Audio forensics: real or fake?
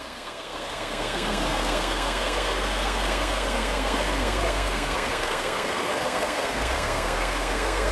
fake